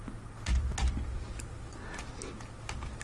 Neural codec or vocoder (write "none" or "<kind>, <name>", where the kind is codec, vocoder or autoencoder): none